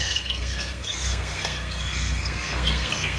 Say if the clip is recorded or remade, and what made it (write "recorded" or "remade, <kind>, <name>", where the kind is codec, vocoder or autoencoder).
remade, codec, SNAC